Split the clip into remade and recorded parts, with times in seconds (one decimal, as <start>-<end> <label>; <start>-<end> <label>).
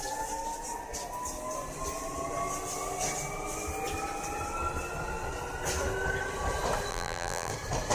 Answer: 0.0-6.9 recorded; 6.9-7.5 remade; 7.5-7.9 recorded